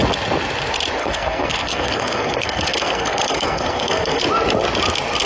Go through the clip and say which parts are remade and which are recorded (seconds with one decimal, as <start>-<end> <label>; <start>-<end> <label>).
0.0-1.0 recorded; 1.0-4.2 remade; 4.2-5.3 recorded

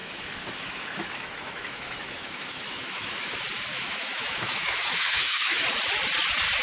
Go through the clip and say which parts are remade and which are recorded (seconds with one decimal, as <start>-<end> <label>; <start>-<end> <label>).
0.0-3.3 remade; 3.3-3.7 recorded; 3.7-5.6 remade; 5.6-6.6 recorded

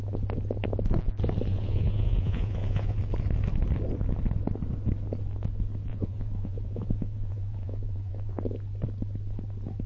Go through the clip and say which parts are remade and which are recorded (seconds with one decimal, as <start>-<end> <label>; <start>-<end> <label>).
0.0-1.5 recorded; 1.5-3.0 remade; 3.0-5.9 recorded; 5.9-8.4 remade; 8.4-9.9 recorded

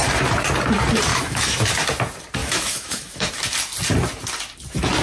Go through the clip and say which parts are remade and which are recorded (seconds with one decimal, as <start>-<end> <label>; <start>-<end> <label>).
0.0-1.1 recorded; 1.1-1.6 remade; 1.6-2.4 recorded; 2.4-3.3 remade; 3.3-5.0 recorded